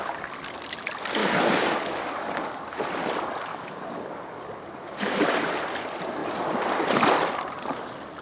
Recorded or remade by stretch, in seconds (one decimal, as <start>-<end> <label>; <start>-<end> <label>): 0.0-1.2 recorded; 1.2-2.6 remade; 2.6-3.5 recorded; 3.5-5.5 remade; 5.5-8.2 recorded